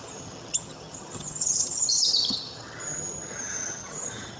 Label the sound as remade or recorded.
remade